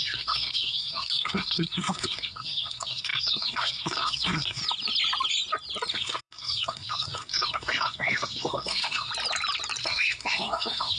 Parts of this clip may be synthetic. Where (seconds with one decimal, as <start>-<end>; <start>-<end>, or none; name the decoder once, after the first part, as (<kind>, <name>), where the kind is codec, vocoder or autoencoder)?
0.0-4.6 (codec, SNAC); 5.9-9.1; 9.8-11.0